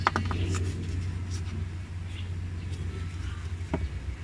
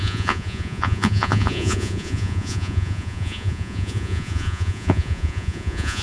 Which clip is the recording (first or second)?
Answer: first